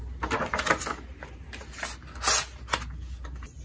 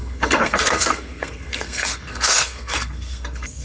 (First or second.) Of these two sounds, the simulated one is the second